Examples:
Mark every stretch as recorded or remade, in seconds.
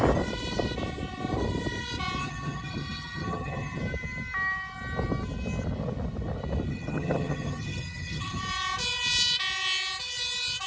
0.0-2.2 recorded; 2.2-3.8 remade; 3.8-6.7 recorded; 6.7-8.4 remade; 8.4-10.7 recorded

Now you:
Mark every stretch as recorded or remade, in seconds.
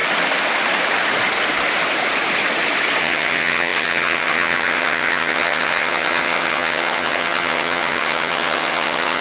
0.0-3.0 recorded; 3.0-9.2 remade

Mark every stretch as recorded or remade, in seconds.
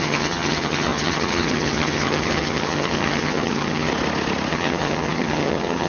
0.0-3.9 remade; 3.9-4.5 recorded; 4.5-5.9 remade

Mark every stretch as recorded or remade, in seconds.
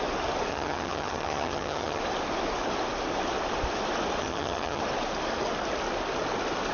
0.0-0.5 recorded; 0.5-2.0 remade; 2.0-4.2 recorded; 4.2-4.8 remade; 4.8-6.7 recorded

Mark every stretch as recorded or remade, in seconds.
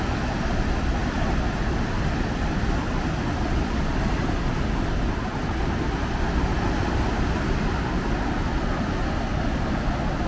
0.0-10.3 recorded